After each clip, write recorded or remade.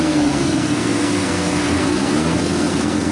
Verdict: remade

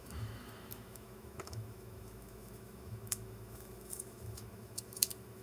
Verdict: remade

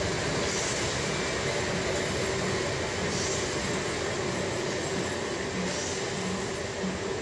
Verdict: recorded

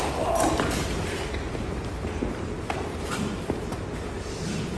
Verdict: recorded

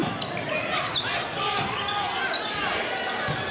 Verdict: recorded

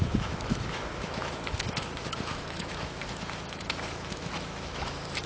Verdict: remade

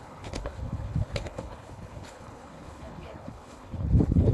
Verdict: remade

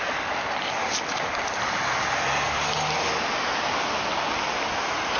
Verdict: recorded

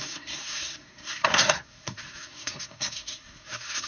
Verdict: remade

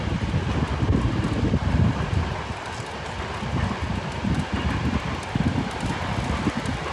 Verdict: recorded